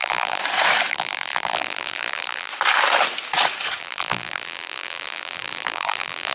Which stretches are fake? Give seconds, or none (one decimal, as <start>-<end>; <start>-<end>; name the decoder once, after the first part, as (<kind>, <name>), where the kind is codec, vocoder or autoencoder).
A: 0.0-0.4 (vocoder, BigVGAN v2); 0.9-2.5; 3.8-6.3